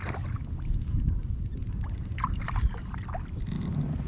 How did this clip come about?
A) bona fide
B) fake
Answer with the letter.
B